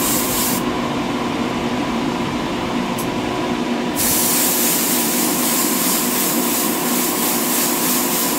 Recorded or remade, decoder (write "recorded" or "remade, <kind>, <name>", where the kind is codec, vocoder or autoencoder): remade, vocoder, BigVGAN v2